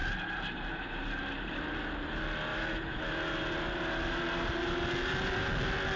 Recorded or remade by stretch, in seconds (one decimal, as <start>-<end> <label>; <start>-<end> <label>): 0.0-2.5 recorded; 2.5-3.0 remade; 3.0-6.0 recorded